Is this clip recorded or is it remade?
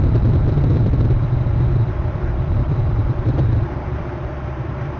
remade